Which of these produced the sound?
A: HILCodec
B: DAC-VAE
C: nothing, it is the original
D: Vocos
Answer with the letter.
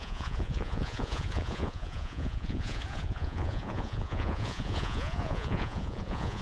D